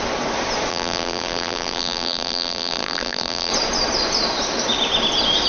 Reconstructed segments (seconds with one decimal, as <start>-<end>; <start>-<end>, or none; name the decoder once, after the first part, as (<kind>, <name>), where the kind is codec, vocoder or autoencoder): 0.7-3.5 (vocoder, BigVGAN v2)